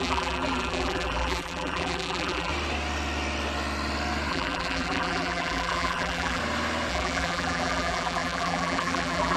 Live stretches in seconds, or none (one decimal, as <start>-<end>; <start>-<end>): 2.5-4.3; 6.4-6.9